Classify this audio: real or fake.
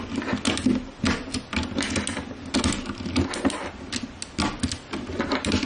real